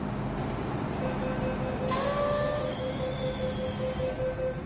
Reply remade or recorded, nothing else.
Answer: recorded